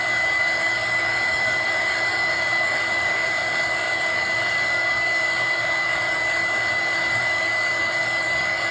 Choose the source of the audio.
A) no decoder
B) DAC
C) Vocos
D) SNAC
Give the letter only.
B